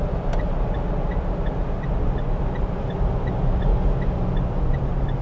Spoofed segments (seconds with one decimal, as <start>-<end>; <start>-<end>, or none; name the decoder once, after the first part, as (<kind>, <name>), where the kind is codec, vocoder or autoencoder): none